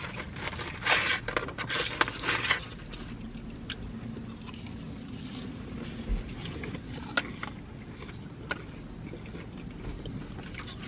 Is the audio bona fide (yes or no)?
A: yes